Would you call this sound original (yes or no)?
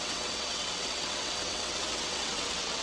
no